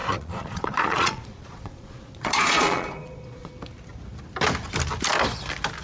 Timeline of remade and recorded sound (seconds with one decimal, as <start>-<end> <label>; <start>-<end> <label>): 0.0-3.5 remade; 3.5-5.8 recorded